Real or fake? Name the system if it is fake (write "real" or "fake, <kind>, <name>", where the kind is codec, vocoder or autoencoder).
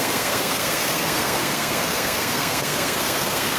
fake, codec, SNAC